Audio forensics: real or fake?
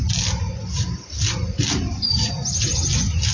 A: real